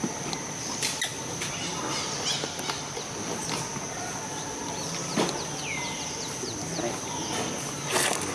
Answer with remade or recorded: recorded